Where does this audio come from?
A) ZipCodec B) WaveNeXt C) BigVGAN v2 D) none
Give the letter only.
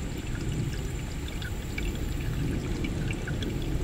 C